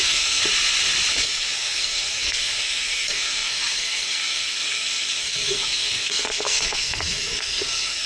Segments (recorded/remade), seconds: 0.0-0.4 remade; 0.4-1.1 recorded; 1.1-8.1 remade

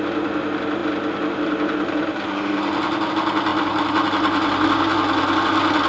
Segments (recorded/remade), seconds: 0.0-5.9 recorded